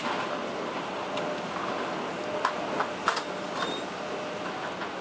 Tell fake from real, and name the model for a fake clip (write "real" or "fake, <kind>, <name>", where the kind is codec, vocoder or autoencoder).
real